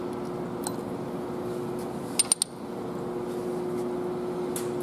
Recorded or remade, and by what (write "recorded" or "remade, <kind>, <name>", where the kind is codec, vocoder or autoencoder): recorded